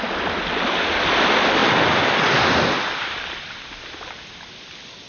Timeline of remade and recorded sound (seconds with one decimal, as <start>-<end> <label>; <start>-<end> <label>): 0.0-5.1 recorded